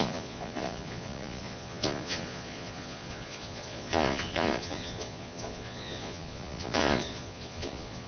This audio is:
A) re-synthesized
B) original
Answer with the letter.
A